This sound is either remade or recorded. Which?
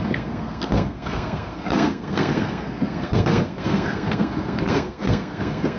remade